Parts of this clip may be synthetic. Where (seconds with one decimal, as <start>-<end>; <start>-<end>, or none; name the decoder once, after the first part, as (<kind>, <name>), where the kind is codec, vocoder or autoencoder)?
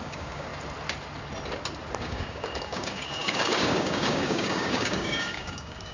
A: 0.0-0.5 (codec, DAC); 2.0-5.9